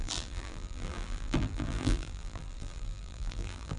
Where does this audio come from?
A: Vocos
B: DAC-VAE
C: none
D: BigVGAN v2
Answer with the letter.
D